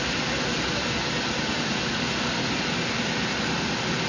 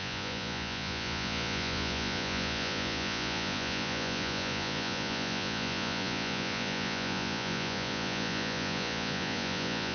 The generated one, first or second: second